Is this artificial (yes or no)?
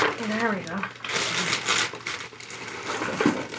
no